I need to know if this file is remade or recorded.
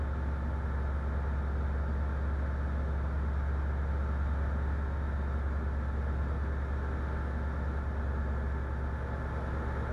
recorded